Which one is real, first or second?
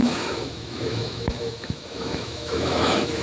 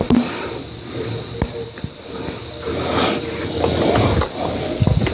second